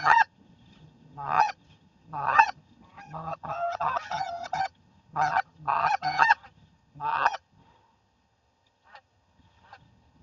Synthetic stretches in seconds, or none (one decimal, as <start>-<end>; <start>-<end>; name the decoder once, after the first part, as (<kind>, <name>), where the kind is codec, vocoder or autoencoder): 0.0-10.2 (vocoder, HiFi-GAN)